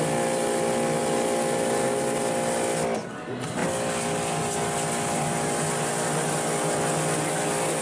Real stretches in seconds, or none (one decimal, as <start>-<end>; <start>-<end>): 0.0-7.8